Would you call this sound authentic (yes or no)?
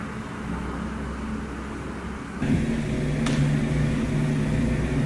yes